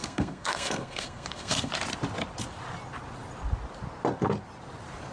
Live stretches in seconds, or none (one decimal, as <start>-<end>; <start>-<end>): 1.7-5.1